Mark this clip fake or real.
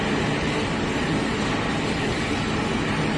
fake